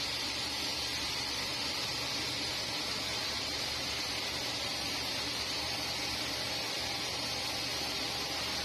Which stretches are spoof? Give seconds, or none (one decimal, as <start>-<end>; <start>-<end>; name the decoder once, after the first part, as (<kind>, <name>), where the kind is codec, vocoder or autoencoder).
0.0-8.6 (vocoder, BigVGAN v2)